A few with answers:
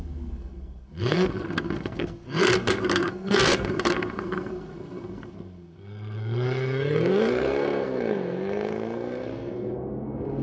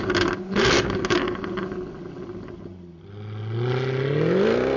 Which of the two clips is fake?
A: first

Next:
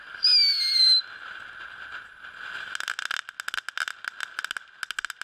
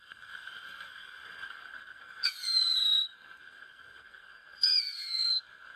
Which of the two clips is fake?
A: second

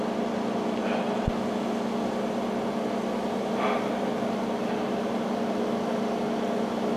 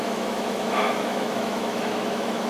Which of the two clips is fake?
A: second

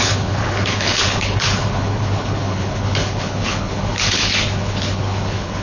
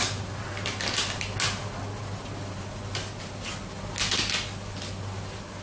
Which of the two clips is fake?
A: first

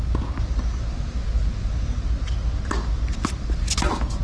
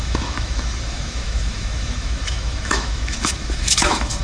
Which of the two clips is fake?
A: second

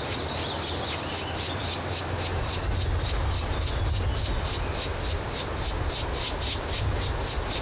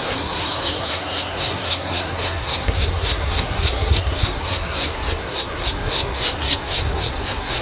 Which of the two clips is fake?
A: second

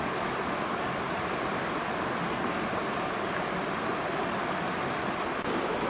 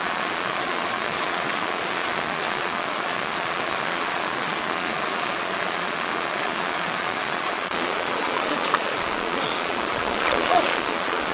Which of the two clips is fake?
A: second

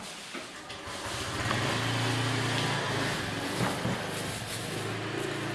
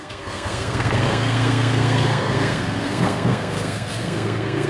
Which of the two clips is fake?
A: second